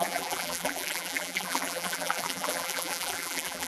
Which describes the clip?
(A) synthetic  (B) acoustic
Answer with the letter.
A